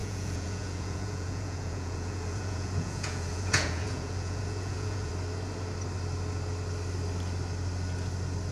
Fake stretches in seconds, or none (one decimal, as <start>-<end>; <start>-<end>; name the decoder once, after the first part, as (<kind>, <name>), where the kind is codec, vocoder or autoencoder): 0.0-5.1 (vocoder, Vocos)